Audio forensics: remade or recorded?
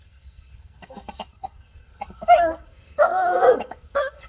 remade